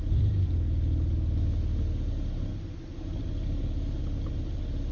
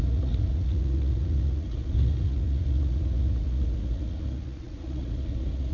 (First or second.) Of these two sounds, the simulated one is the second